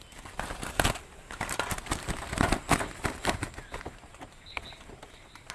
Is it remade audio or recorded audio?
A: recorded